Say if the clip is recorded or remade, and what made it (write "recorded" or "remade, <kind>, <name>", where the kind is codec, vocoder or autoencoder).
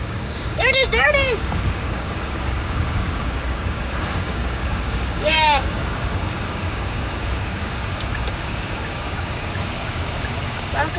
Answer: remade, codec, DAC